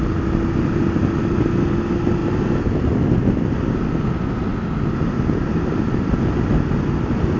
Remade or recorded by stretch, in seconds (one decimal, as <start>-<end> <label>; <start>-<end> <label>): 0.0-2.2 recorded; 2.2-3.0 remade; 3.0-7.4 recorded